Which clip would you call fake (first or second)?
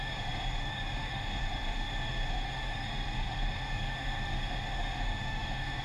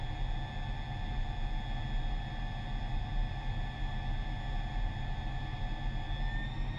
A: first